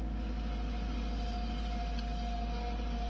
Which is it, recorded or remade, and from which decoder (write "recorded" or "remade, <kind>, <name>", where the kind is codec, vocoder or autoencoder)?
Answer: recorded